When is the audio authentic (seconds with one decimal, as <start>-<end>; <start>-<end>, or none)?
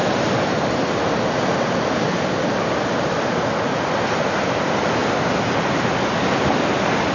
0.0-7.1